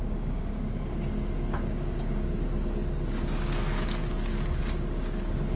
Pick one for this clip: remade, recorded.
remade